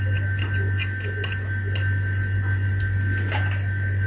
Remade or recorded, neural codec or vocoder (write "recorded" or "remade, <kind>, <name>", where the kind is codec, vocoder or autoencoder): recorded